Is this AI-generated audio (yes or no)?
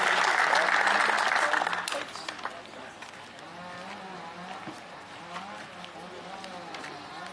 no